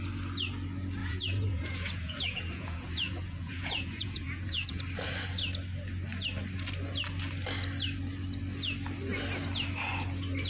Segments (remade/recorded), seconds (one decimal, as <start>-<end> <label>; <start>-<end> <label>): 0.0-1.0 recorded; 1.0-4.8 remade; 4.8-10.5 recorded

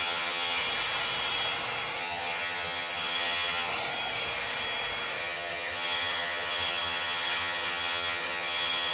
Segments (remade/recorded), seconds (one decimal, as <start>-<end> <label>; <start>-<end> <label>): 0.0-0.6 remade; 0.6-2.0 recorded; 2.0-3.7 remade; 3.7-5.2 recorded; 5.2-8.9 remade

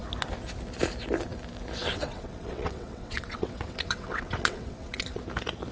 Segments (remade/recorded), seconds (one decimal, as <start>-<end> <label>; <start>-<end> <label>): 0.0-1.8 recorded; 1.8-5.2 remade; 5.2-5.7 recorded

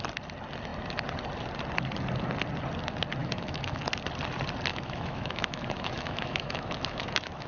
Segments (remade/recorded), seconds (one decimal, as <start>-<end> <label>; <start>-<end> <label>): 0.0-3.2 recorded; 3.2-3.8 remade; 3.8-4.7 recorded; 4.7-7.5 remade

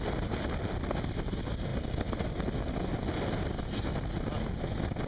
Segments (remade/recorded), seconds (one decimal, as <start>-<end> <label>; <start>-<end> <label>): 0.0-5.1 recorded

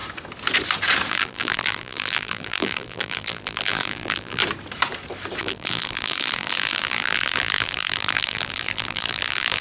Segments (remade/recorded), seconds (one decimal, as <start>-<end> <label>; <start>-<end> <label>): 0.0-1.1 recorded; 1.1-4.4 remade; 4.4-5.4 recorded; 5.4-9.6 remade